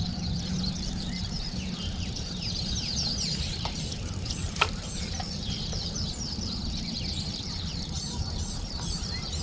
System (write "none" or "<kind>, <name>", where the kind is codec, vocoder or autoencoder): vocoder, BigVGAN v2